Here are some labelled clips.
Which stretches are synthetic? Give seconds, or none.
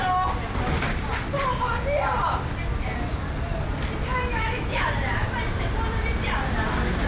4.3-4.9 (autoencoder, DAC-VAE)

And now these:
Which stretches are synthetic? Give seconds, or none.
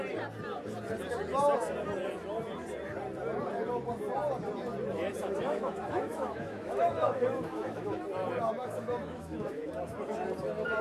5.2-8.0 (autoencoder, DAC-VAE); 8.6-9.7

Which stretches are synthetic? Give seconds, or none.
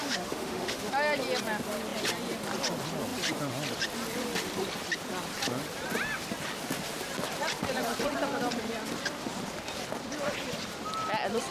0.0-0.9 (autoencoder, DAC-VAE)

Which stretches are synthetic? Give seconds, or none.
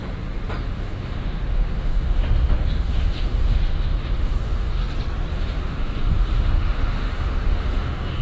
0.6-4.8 (autoencoder, DAC-VAE); 5.3-8.2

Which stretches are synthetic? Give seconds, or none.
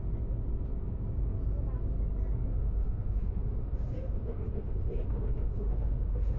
2.5-6.4 (autoencoder, DAC-VAE)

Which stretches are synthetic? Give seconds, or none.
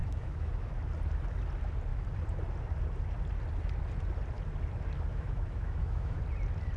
0.0-0.7 (autoencoder, DAC-VAE); 5.1-6.2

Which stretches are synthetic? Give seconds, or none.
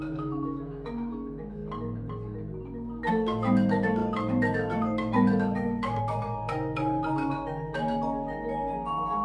0.0-1.6 (autoencoder, DAC-VAE); 3.1-9.2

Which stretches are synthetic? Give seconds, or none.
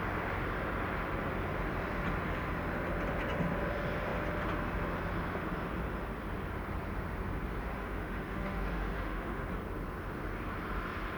7.7-9.5 (autoencoder, DAC-VAE)